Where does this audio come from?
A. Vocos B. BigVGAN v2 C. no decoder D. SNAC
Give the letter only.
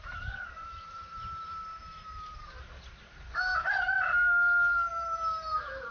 B